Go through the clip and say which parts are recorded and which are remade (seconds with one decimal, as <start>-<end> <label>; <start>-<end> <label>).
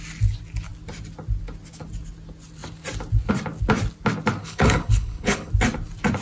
0.0-4.4 recorded; 4.4-5.5 remade; 5.5-6.2 recorded